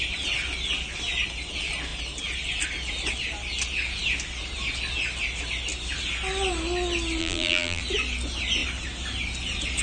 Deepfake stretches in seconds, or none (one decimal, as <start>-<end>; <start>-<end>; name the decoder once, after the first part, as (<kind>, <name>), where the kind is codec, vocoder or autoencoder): 7.2-7.8 (vocoder, BigVGAN v2)